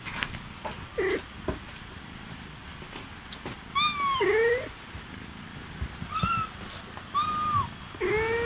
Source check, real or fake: real